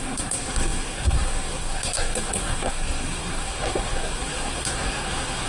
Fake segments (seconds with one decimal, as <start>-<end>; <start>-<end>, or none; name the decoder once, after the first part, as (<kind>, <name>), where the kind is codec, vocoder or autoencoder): 0.0-5.5 (codec, SNAC)